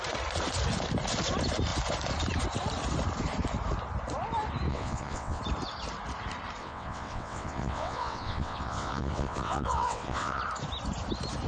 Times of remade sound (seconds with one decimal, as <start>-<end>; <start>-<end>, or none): 4.7-5.4; 6.6-10.4